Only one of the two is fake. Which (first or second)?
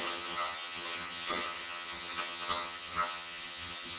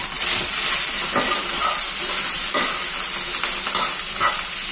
first